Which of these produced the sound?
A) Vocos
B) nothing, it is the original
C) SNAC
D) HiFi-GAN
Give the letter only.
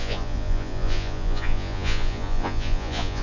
A